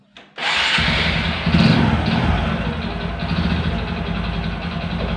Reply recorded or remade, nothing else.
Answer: recorded